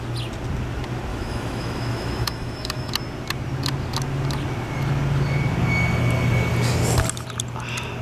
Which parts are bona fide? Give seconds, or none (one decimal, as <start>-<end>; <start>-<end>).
0.0-1.1; 2.9-8.0